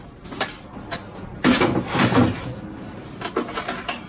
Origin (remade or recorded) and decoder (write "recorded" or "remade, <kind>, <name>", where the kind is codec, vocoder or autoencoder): recorded